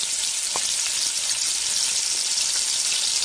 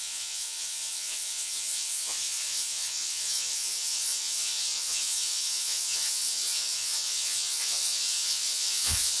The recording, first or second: first